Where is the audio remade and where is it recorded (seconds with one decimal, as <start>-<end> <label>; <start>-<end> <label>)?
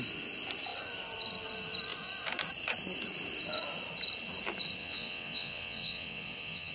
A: 0.0-4.8 recorded; 4.8-6.7 remade